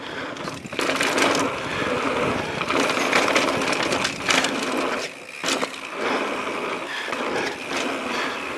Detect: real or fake real